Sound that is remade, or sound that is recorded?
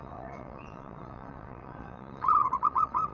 remade